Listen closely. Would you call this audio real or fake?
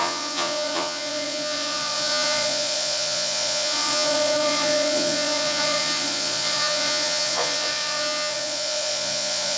fake